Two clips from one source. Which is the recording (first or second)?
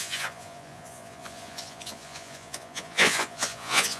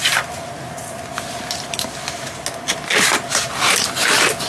second